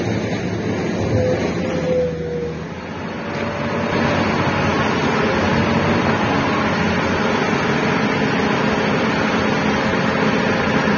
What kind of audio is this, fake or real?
real